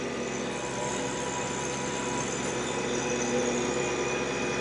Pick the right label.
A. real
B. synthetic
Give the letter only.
A